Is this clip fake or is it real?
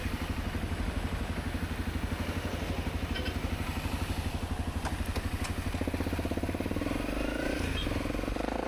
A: real